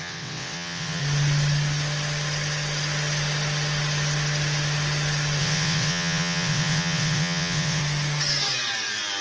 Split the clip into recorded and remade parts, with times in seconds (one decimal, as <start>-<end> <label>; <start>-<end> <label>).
0.0-1.0 remade; 1.0-5.4 recorded; 5.4-7.8 remade; 7.8-9.2 recorded